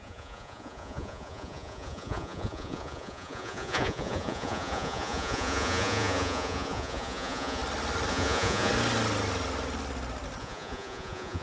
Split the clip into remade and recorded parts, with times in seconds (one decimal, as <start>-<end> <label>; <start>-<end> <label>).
0.0-7.6 remade; 7.6-8.1 recorded; 8.1-8.7 remade; 8.7-10.4 recorded; 10.4-11.4 remade